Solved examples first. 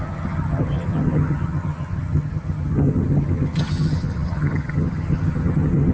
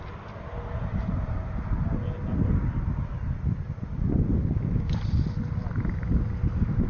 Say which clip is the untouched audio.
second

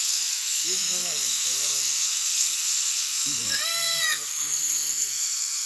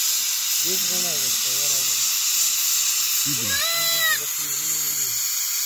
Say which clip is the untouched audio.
second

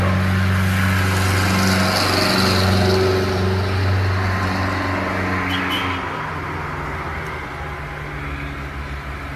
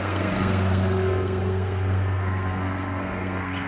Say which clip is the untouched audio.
first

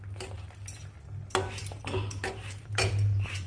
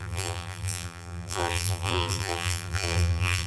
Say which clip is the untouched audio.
first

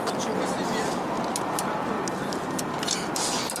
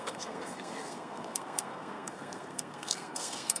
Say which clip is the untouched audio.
first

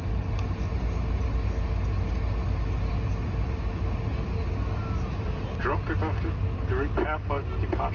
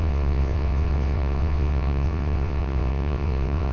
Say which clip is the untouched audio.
first